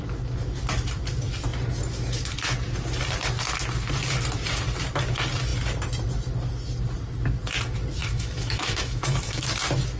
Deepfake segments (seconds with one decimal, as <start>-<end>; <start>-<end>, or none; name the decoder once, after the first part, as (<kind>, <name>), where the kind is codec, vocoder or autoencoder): 8.0-9.5 (autoencoder, DAC-VAE)